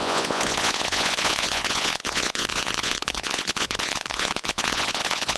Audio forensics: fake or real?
fake